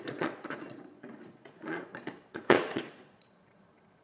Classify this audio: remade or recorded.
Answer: remade